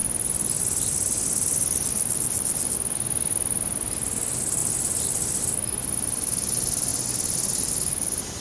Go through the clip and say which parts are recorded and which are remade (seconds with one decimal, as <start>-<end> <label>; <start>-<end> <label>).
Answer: 0.0-8.4 recorded